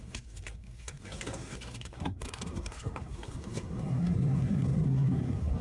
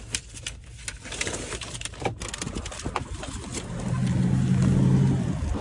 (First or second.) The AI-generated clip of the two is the first